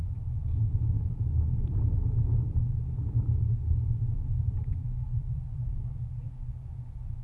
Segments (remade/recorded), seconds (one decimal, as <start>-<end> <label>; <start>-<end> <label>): 0.0-0.4 remade; 0.4-4.7 recorded; 4.7-5.7 remade; 5.7-6.3 recorded; 6.3-7.2 remade